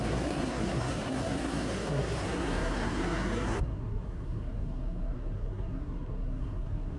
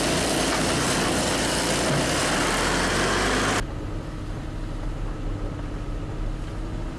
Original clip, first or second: second